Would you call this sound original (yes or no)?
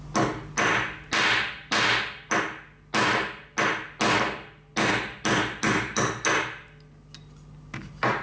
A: yes